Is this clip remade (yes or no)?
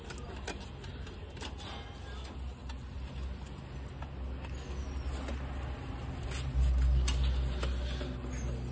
no